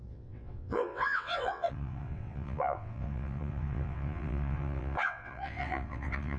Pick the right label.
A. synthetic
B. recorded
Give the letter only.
A